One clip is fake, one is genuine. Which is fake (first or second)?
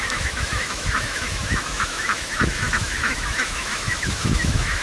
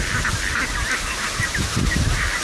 first